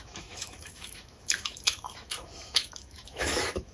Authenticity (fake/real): fake